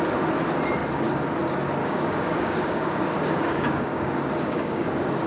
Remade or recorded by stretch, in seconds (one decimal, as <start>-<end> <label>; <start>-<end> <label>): 0.0-1.8 recorded; 1.8-5.3 remade